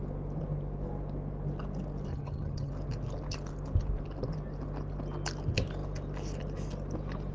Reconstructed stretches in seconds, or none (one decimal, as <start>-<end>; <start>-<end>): 2.1-2.7